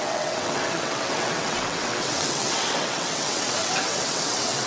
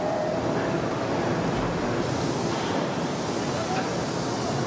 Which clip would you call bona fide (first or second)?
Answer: second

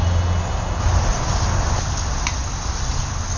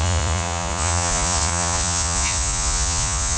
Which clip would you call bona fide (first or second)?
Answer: first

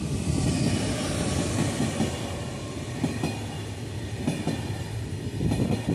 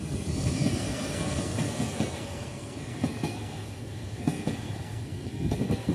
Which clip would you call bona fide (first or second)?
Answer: first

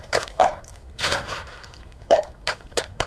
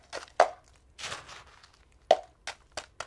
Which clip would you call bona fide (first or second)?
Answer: second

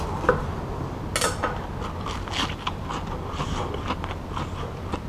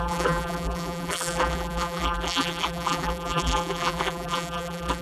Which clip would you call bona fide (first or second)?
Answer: first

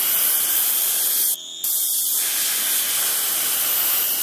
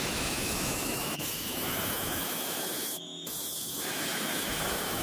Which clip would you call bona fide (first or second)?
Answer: first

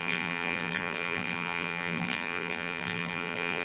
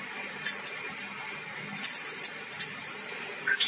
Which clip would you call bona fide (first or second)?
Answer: second